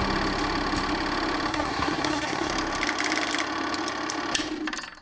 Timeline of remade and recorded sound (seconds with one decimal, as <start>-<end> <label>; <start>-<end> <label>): 0.0-1.5 recorded; 1.5-2.5 remade; 2.5-5.0 recorded